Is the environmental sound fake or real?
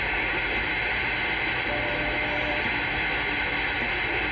real